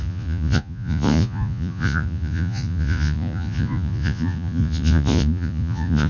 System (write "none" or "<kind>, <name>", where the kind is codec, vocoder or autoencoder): vocoder, Vocos